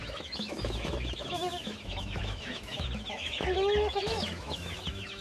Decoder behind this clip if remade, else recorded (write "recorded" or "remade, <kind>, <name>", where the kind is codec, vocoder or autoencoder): remade, autoencoder, DAC-VAE